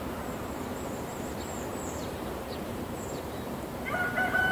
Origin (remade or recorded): remade